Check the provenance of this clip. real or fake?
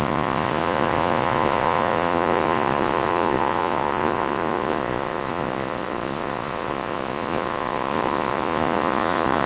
fake